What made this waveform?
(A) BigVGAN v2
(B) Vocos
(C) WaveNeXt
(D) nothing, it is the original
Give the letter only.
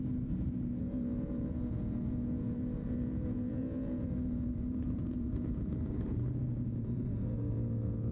B